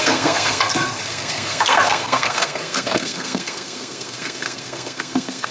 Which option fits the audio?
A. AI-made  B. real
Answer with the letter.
A